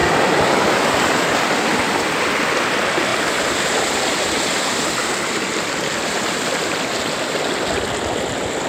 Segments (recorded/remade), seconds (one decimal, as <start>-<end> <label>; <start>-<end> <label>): 0.0-8.7 recorded